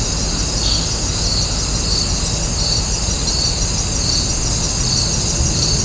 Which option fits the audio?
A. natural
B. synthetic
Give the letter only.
A